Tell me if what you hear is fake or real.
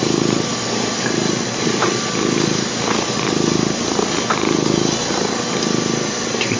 real